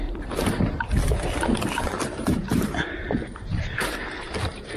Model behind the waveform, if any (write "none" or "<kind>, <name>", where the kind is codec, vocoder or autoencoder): vocoder, BigVGAN v2